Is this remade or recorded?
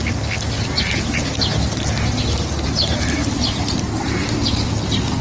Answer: recorded